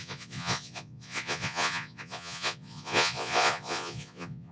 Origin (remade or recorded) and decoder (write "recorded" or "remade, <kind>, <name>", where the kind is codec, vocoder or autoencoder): remade, vocoder, Vocos